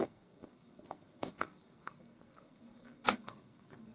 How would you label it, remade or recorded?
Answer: remade